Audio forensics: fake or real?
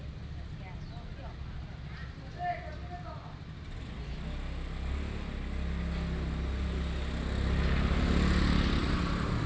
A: real